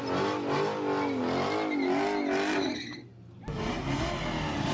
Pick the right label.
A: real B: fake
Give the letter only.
A